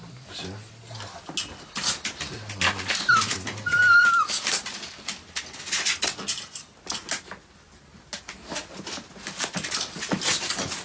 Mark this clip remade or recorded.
recorded